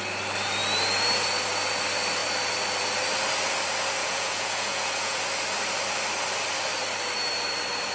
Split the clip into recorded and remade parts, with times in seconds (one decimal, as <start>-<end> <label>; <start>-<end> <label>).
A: 0.0-4.0 recorded; 4.0-5.2 remade; 5.2-7.9 recorded